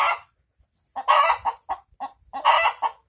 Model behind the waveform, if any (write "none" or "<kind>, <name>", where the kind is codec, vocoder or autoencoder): none